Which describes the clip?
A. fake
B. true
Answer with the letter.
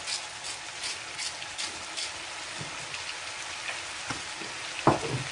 B